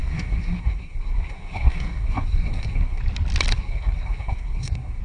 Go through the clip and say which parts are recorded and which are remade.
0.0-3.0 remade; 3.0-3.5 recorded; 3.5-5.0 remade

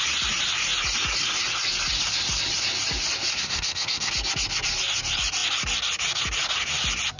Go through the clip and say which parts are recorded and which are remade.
0.0-3.3 recorded; 3.3-4.1 remade; 4.1-7.2 recorded

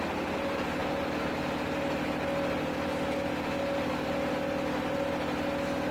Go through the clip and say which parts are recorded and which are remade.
0.0-5.9 recorded

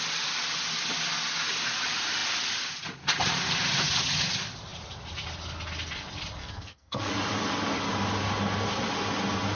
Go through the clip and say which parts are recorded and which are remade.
0.0-6.4 recorded; 6.4-7.1 remade; 7.1-9.6 recorded

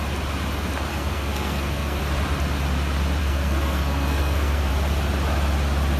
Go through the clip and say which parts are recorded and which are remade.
0.0-0.9 recorded; 0.9-2.0 remade; 2.0-3.2 recorded; 3.2-4.7 remade; 4.7-6.0 recorded

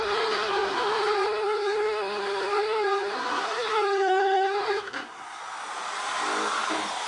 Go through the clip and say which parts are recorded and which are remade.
0.0-5.4 remade; 5.4-7.1 recorded

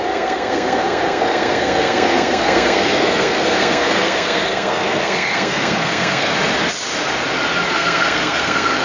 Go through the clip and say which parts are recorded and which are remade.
0.0-6.3 remade; 6.3-7.7 recorded; 7.7-8.8 remade